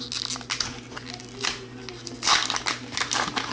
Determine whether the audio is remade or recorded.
recorded